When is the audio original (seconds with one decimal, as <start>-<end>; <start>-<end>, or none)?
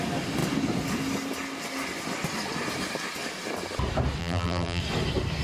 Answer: 0.0-4.2; 4.8-5.4